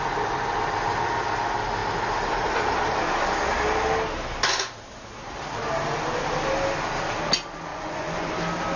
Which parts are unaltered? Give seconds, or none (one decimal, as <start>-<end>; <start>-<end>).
0.0-7.7; 8.3-8.8